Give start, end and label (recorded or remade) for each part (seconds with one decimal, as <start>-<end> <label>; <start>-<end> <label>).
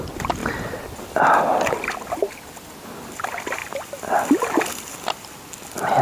0.0-6.0 recorded